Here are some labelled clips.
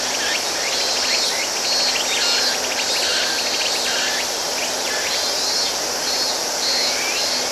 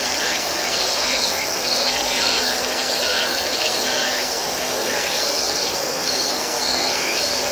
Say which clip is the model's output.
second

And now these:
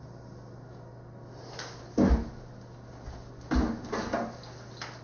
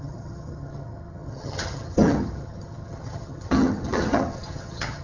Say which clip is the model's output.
second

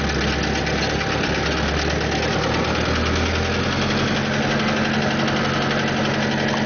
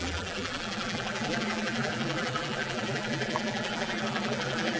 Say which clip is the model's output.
second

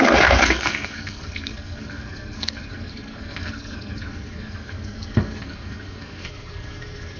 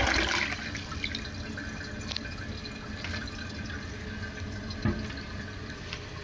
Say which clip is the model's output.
first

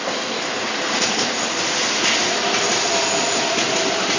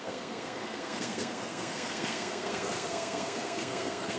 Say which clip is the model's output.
second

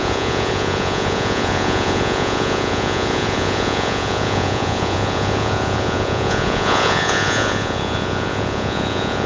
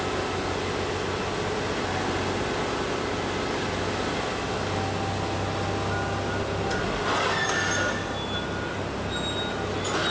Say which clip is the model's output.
first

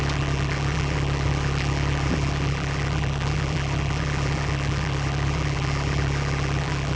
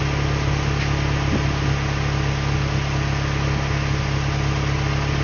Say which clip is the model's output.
first